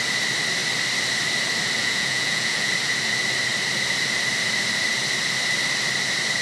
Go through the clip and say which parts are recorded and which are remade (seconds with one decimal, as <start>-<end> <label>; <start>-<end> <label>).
0.0-1.8 recorded; 1.8-2.7 remade; 2.7-6.4 recorded